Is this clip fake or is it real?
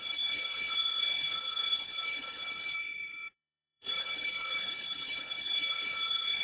fake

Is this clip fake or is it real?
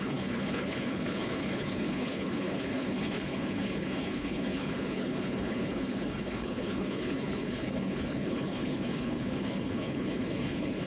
fake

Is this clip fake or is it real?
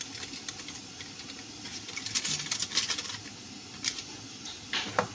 real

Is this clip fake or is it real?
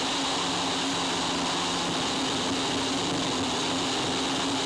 real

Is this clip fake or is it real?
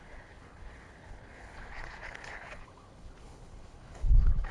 fake